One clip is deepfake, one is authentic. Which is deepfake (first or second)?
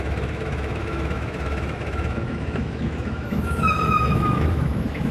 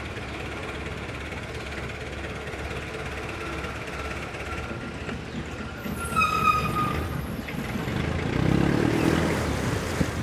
first